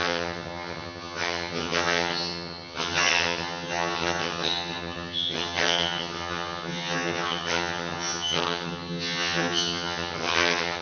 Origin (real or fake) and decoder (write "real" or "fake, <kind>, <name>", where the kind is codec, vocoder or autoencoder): fake, vocoder, HiFi-GAN